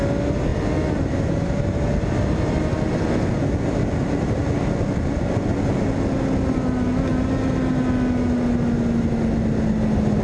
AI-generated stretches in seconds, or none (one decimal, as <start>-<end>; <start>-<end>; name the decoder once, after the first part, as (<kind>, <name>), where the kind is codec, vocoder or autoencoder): none